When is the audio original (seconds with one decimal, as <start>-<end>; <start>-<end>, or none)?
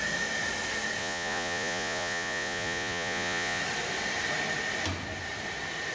0.0-1.0; 3.6-5.9